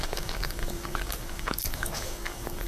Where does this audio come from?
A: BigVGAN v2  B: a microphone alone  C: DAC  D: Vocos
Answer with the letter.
C